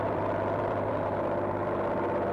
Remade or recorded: remade